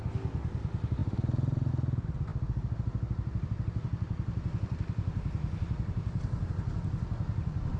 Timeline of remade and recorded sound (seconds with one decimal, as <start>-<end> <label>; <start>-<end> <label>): 0.0-1.0 recorded; 1.0-1.7 remade; 1.7-2.3 recorded; 2.3-6.5 remade; 6.5-7.8 recorded